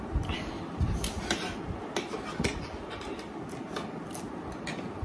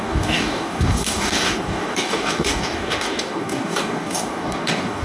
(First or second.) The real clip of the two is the first